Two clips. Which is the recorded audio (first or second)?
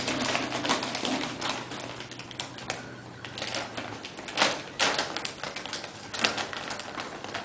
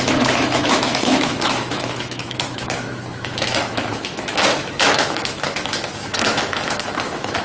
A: first